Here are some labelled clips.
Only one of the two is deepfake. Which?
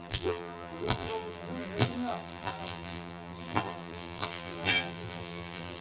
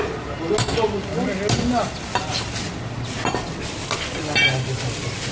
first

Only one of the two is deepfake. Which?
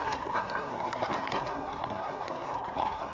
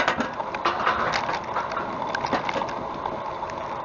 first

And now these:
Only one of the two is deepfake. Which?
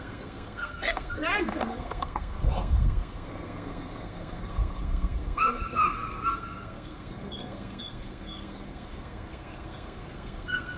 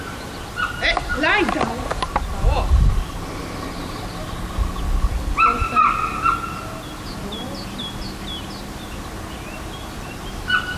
first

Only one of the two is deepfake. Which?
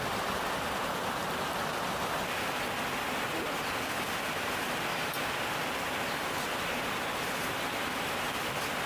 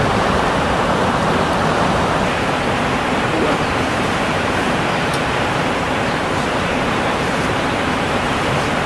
second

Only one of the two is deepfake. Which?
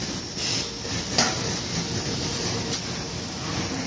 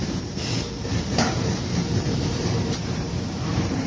second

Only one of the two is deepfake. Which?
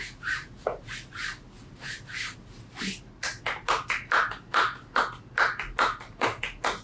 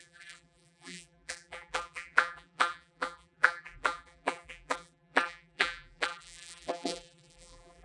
second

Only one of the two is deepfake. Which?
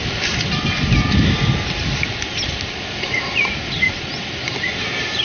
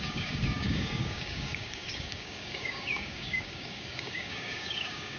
second